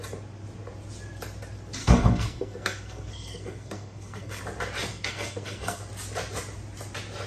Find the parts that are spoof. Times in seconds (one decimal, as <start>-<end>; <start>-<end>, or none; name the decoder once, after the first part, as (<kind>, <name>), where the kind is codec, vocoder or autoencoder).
1.8-4.4 (codec, SNAC); 4.9-5.8